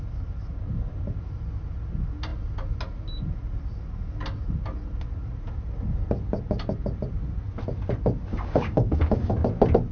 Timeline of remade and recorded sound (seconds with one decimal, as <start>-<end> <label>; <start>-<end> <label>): 0.0-8.3 recorded; 8.3-9.3 remade; 9.3-9.9 recorded